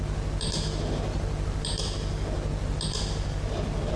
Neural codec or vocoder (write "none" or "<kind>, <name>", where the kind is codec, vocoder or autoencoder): none